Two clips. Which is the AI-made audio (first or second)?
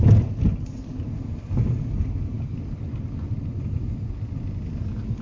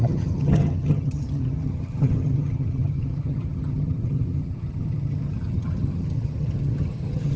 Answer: second